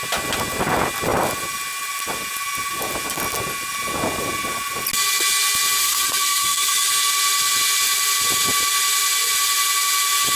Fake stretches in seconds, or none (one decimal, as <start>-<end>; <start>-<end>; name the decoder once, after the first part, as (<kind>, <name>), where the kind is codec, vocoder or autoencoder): 5.8-6.9 (codec, SNAC)